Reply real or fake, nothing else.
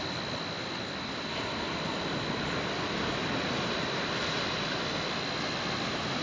real